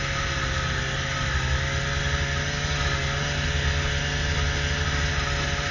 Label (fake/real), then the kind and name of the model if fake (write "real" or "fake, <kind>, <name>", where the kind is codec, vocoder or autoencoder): real